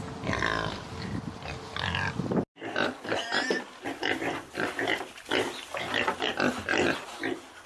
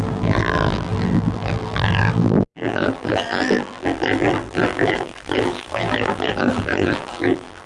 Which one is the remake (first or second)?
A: second